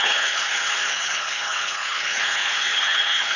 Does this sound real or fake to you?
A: fake